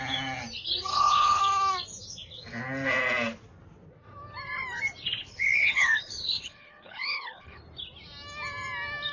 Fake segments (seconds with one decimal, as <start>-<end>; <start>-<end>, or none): 0.9-1.4; 5.2-7.6